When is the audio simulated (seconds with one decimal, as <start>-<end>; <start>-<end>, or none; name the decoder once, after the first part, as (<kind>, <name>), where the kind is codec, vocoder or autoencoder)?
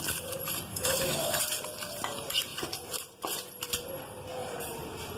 0.7-1.4 (autoencoder, DAC-VAE)